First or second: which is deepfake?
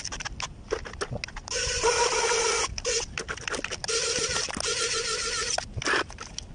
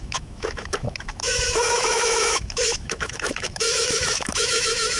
second